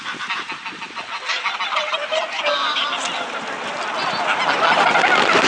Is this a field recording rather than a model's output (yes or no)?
yes